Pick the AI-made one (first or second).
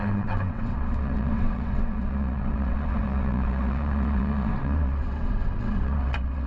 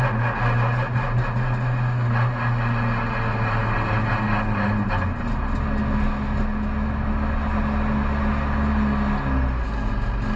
first